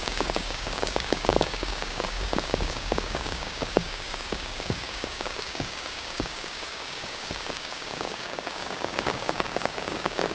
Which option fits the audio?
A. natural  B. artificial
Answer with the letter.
B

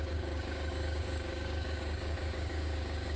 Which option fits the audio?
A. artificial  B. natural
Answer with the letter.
A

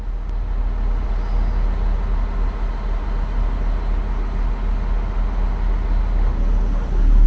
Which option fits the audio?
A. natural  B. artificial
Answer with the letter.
A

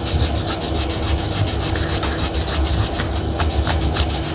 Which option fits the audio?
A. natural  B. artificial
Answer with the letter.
A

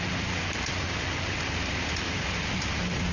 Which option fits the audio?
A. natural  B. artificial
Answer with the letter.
A